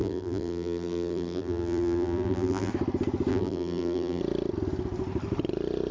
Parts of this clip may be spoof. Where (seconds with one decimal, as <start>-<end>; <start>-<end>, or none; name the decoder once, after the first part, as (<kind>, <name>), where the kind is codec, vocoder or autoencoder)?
0.0-2.7 (vocoder, BigVGAN v2); 3.3-4.2